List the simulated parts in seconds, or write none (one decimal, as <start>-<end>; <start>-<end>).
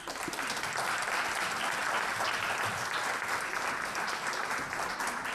none